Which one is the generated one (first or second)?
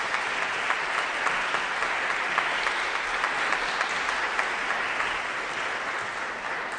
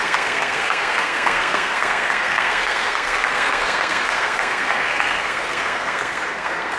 second